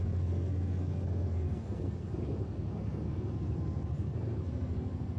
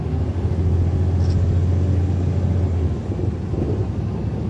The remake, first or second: first